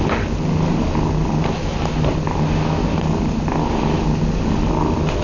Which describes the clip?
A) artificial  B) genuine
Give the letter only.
B